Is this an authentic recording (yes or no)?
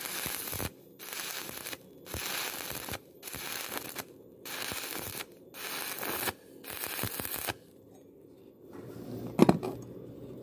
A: yes